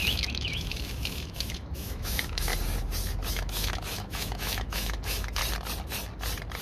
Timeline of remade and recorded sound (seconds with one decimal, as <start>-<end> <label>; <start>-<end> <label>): 0.0-2.5 remade; 2.5-3.3 recorded; 3.3-5.4 remade; 5.4-6.6 recorded